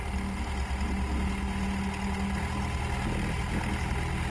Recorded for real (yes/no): yes